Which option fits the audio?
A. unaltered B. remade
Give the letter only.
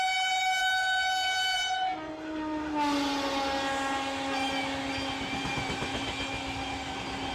A